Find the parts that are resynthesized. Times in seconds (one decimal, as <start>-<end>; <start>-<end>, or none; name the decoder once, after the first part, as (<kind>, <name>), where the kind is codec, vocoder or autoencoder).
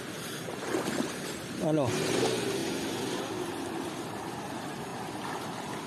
none